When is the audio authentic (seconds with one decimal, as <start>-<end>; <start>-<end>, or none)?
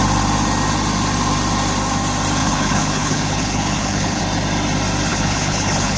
0.0-2.4; 4.2-5.1